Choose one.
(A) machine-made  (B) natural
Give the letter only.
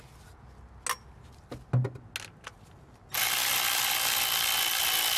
B